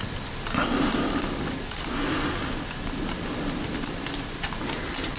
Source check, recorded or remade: recorded